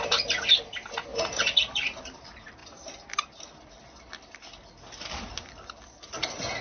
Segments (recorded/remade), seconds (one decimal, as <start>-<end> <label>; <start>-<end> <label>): 0.0-6.6 recorded

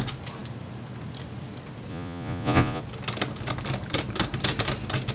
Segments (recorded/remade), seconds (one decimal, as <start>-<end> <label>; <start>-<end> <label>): 0.0-1.9 recorded; 1.9-2.8 remade; 2.8-5.1 recorded